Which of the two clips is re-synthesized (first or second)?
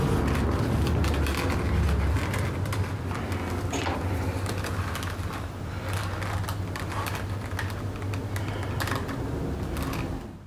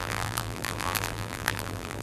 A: second